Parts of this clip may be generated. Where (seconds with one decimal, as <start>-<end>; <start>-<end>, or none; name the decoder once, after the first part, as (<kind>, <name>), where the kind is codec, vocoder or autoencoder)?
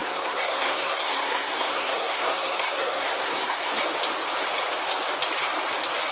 0.0-3.7 (codec, SNAC)